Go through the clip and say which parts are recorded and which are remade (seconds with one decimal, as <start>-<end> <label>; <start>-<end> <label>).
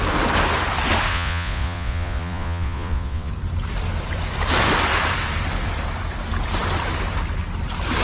0.0-1.1 recorded; 1.1-3.3 remade; 3.3-8.0 recorded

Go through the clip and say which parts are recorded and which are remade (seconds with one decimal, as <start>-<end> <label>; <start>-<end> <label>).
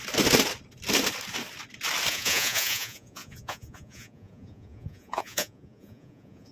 0.0-2.1 recorded; 2.1-6.5 remade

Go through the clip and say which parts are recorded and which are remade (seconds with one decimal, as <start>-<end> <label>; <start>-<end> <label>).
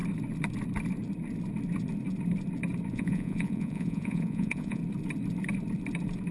0.0-2.9 recorded; 2.9-4.8 remade; 4.8-6.3 recorded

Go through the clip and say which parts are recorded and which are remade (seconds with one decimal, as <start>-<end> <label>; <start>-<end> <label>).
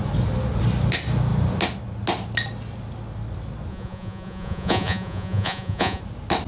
0.0-3.7 recorded; 3.7-6.0 remade; 6.0-6.5 recorded